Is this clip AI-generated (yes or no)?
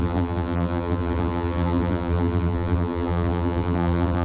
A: yes